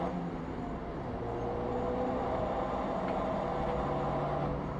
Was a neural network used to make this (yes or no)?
no